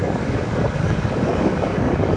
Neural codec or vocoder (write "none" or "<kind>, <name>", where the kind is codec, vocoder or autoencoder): codec, DAC